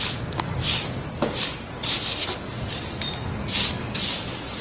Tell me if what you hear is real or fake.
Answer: real